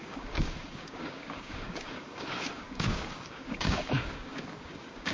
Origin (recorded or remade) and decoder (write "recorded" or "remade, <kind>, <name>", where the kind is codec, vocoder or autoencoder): remade, codec, DAC